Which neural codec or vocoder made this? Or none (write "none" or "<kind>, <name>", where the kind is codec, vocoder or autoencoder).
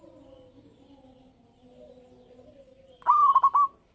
none